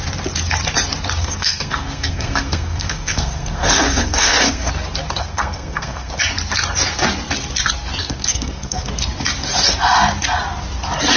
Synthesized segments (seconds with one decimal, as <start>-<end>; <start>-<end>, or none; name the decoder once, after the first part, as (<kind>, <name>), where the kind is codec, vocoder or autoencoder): 1.2-4.7 (codec, SNAC); 5.2-6.1; 8.0-8.9